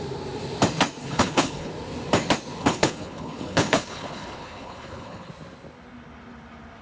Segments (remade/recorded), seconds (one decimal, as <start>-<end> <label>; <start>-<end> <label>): 0.0-1.0 recorded; 1.0-1.7 remade; 1.7-2.6 recorded; 2.6-5.3 remade; 5.3-6.8 recorded